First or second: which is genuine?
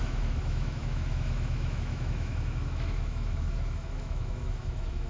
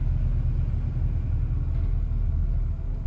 second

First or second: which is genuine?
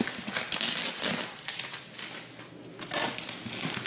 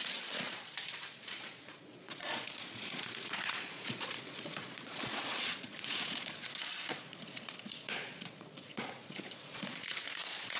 first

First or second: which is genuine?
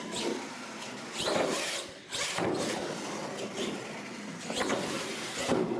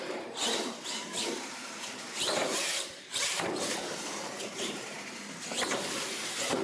first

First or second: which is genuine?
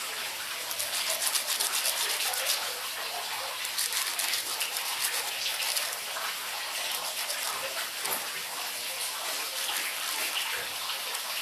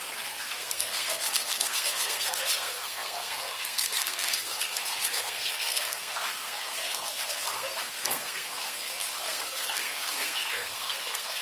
first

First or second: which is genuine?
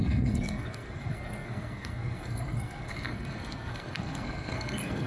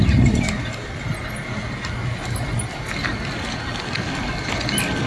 second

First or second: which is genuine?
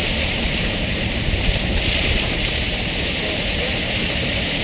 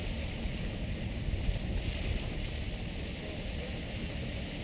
second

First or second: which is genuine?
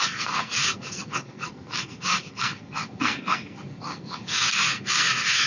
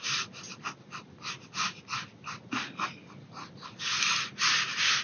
second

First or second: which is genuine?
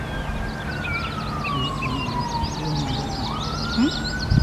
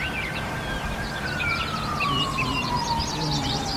first